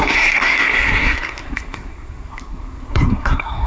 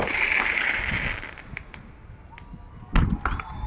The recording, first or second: second